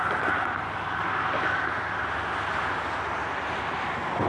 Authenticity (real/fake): real